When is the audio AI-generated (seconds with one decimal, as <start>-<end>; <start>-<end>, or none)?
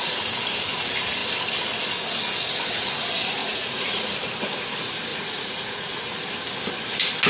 3.4-4.1; 5.1-6.0